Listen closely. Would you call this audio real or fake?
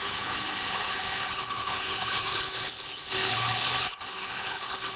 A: fake